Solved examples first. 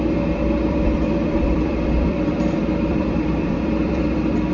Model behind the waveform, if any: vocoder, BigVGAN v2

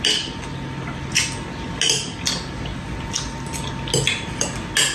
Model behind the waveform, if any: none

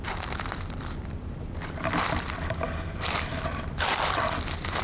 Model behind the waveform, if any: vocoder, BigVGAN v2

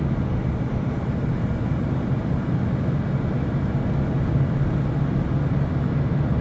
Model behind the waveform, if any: none